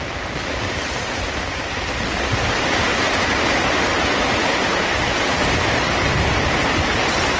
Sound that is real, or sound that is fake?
real